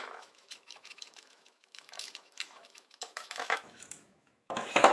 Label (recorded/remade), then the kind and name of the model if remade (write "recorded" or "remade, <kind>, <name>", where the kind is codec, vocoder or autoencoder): remade, autoencoder, DAC-VAE